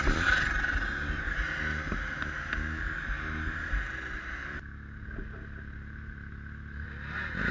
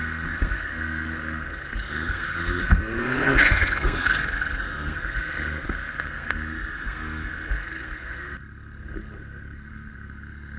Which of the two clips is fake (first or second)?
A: second